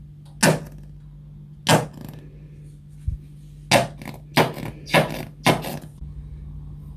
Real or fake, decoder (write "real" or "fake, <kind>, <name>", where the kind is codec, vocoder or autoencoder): real